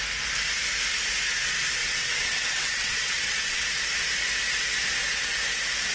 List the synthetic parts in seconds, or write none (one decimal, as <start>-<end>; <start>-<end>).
1.8-3.6